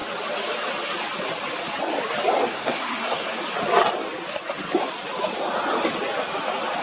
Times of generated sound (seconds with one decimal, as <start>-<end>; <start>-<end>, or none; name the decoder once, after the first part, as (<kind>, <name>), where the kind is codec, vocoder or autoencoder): 2.4-3.3 (codec, SNAC)